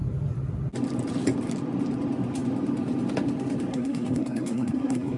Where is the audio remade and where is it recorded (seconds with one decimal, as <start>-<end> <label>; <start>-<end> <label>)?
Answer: 0.0-3.7 recorded; 3.7-5.2 remade